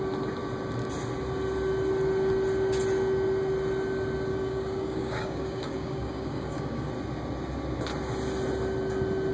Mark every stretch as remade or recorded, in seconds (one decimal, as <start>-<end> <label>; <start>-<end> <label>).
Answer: 0.0-4.3 recorded; 4.3-6.9 remade; 6.9-9.3 recorded